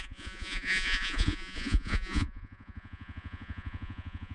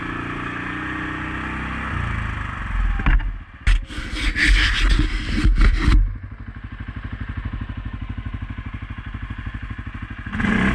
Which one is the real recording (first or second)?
second